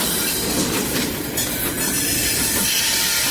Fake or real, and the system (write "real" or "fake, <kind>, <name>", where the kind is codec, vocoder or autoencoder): real